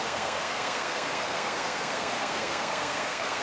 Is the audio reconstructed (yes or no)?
yes